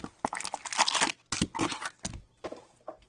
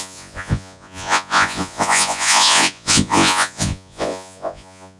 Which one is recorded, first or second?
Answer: first